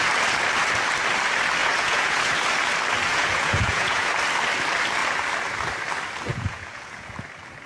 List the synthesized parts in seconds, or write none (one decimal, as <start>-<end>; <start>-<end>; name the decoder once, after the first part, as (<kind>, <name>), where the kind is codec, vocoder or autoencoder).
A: 1.6-2.3 (vocoder, Vocos); 3.1-4.1; 6.3-7.1